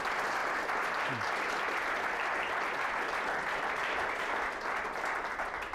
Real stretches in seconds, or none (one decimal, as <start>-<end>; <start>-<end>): 0.0-5.7

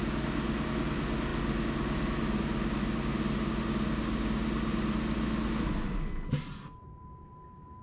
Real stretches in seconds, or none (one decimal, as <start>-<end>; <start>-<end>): 0.0-7.8

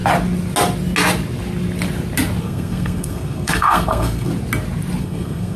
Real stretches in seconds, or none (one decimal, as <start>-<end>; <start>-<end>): 0.0-2.4; 4.3-5.0

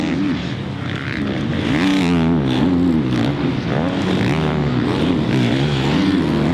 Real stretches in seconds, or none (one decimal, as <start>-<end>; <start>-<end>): 0.0-0.4; 1.4-6.5